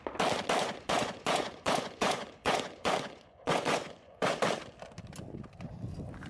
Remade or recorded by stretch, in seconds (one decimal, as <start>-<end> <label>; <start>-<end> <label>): 0.0-0.6 recorded; 0.6-4.4 remade; 4.4-6.3 recorded